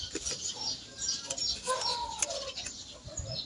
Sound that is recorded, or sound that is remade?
recorded